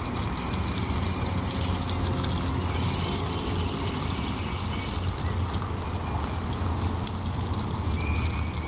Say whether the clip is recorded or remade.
recorded